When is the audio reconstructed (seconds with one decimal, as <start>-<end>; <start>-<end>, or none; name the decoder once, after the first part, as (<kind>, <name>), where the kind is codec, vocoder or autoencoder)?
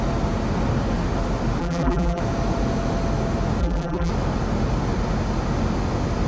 1.6-2.2 (vocoder, BigVGAN v2); 3.6-4.1